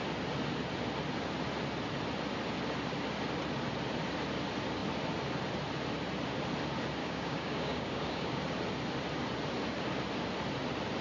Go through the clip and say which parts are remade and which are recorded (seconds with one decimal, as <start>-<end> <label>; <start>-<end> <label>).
0.0-7.0 recorded; 7.0-8.4 remade; 8.4-11.0 recorded